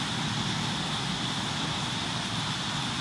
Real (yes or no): yes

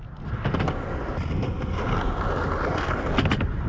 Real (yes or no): yes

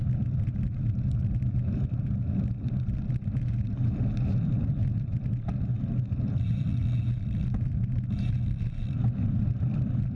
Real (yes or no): yes